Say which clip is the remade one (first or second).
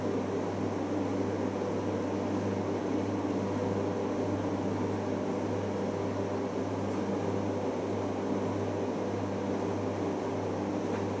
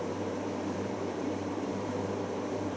second